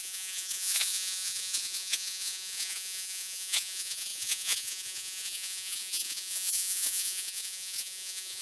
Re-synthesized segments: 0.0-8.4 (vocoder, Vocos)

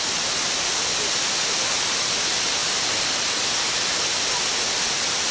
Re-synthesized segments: none

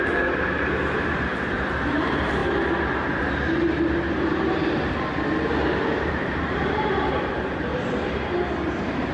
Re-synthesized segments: 0.0-2.4 (vocoder, BigVGAN v2); 6.1-7.7

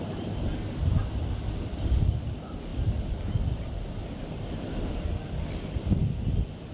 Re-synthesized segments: none

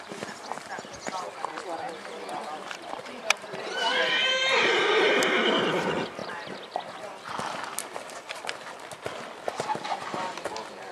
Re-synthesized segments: 1.8-5.1 (vocoder, BigVGAN v2); 6.2-7.1

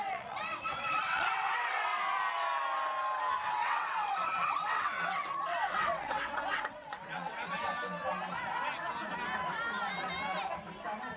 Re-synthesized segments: 0.0-1.9 (vocoder, WaveNeXt); 3.5-7.7

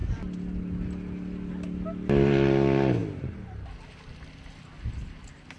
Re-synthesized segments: none

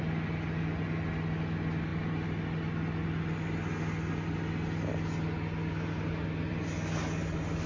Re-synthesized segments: none